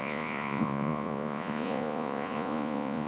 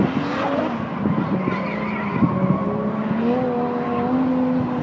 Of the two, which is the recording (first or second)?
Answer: second